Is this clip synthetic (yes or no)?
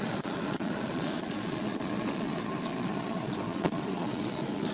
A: yes